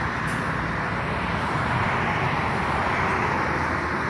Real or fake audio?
real